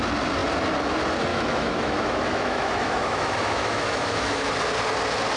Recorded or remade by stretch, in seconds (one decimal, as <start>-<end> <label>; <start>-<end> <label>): 0.0-1.3 recorded; 1.3-4.5 remade; 4.5-5.4 recorded